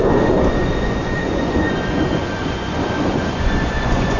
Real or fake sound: fake